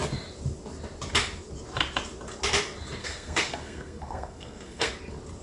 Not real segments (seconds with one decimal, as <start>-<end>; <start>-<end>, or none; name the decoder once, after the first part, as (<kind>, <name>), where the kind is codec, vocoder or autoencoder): 3.0-4.9 (codec, SNAC)